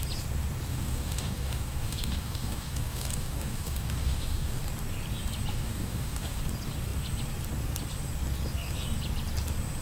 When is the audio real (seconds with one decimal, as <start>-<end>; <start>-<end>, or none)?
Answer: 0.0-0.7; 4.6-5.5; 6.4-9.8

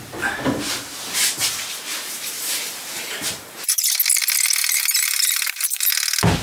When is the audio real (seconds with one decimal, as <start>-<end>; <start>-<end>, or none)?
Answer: 0.0-1.9; 3.9-4.6; 5.9-6.4

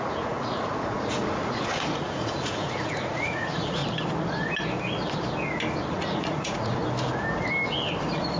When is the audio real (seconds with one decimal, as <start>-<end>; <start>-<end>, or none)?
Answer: 3.8-5.9; 6.8-8.0